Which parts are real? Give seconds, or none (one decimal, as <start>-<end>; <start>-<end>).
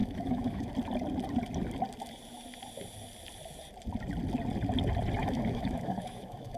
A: 0.7-5.2